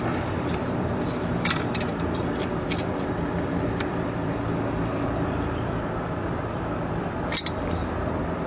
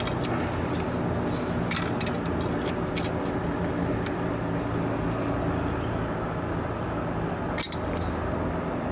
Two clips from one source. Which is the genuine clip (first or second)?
second